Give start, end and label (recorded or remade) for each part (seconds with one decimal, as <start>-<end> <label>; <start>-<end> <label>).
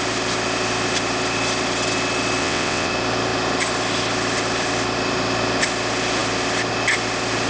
0.0-2.4 recorded; 2.4-2.9 remade; 2.9-7.5 recorded